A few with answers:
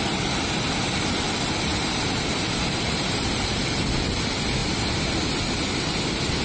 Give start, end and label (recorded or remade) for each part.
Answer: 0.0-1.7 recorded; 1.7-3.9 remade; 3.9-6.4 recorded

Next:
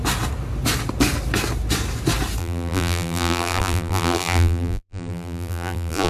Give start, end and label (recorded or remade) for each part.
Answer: 0.0-2.4 recorded; 2.4-6.1 remade

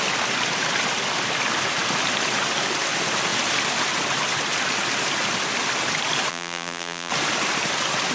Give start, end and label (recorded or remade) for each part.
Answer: 0.0-6.3 recorded; 6.3-7.1 remade; 7.1-8.1 recorded

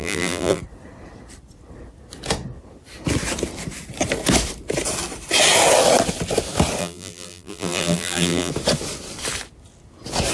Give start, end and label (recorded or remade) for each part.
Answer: 0.0-0.6 remade; 0.6-6.8 recorded; 6.8-8.5 remade; 8.5-10.3 recorded

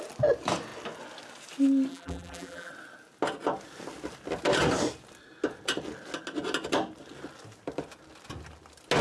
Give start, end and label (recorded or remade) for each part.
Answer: 0.0-1.9 recorded; 1.9-2.7 remade; 2.7-9.0 recorded

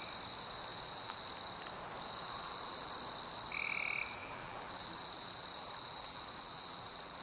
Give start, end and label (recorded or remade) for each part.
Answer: 0.0-0.7 recorded; 0.7-1.2 remade; 1.2-2.2 recorded; 2.2-2.9 remade; 2.9-4.2 recorded; 4.2-7.2 remade

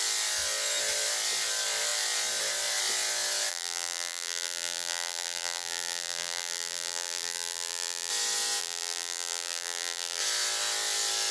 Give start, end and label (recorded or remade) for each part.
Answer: 0.0-3.5 recorded; 3.5-8.1 remade; 8.1-8.6 recorded; 8.6-10.2 remade; 10.2-11.3 recorded

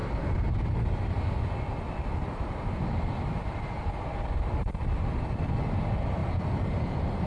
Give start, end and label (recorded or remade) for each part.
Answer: 0.0-1.0 remade; 1.0-4.8 recorded; 4.8-5.4 remade; 5.4-6.2 recorded; 6.2-7.3 remade